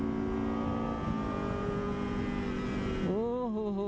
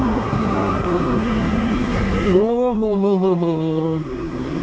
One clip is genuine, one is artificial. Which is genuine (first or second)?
first